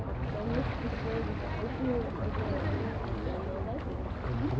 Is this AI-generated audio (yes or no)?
no